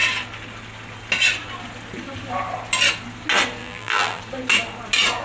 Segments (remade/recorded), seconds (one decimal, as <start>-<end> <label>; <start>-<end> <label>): 0.0-3.6 recorded; 3.6-4.2 remade; 4.2-5.2 recorded